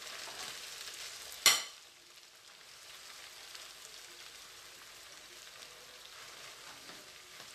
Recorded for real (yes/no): yes